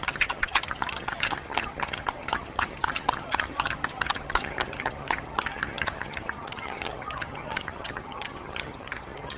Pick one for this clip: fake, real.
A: fake